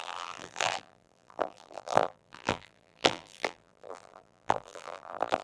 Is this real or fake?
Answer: fake